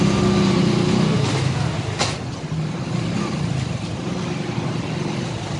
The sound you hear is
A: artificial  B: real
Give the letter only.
B